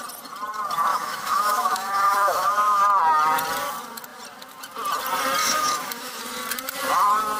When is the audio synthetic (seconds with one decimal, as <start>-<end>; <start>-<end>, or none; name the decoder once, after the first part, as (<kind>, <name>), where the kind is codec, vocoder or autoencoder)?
0.9-2.8 (autoencoder, DAC-VAE); 5.4-6.2